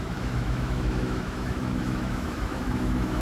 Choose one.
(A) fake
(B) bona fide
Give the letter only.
A